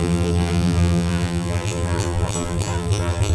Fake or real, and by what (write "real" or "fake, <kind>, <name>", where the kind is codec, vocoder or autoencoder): fake, vocoder, BigVGAN v2